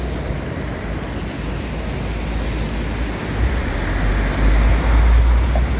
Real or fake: real